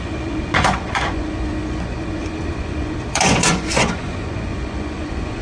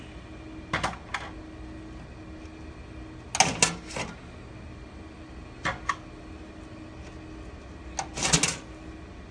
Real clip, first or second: second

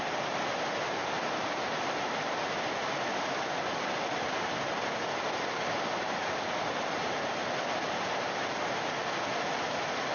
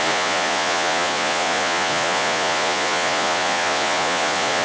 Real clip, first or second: first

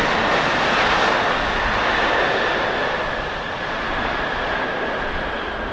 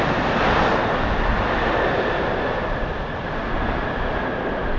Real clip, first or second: first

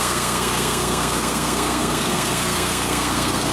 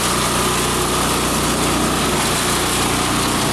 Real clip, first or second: second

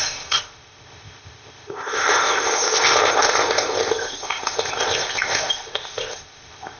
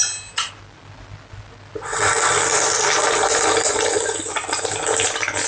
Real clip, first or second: second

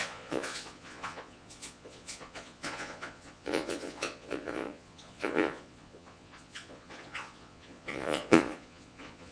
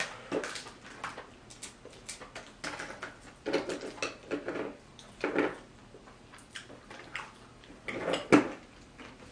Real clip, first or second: second